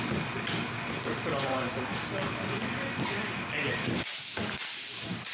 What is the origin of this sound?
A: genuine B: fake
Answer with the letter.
A